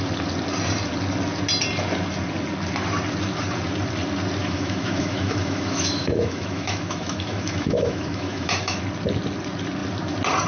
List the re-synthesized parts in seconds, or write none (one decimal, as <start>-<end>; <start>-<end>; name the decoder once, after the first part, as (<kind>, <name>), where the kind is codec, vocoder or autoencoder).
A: 4.4-8.8 (autoencoder, DAC-VAE)